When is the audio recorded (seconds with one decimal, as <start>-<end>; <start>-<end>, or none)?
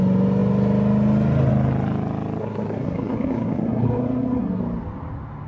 0.0-2.4; 4.6-5.5